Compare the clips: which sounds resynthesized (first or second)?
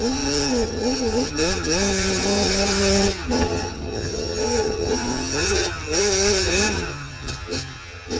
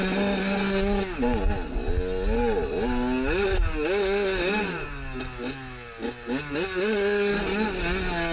first